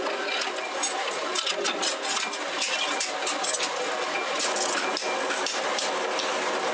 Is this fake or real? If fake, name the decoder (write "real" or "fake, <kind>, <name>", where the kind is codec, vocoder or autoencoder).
real